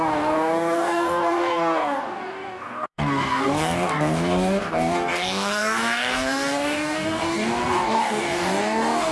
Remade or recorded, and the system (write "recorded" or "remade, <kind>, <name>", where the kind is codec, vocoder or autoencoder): remade, codec, DAC